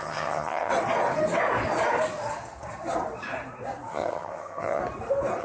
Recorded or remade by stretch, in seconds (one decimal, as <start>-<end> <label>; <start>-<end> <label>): 0.0-0.7 remade; 0.7-3.9 recorded; 3.9-4.8 remade; 4.8-5.4 recorded